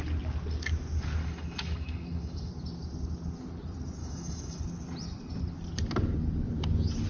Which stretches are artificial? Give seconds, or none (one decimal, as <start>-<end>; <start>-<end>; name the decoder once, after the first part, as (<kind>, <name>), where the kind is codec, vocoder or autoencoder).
1.2-2.5 (autoencoder, DAC-VAE); 4.0-4.6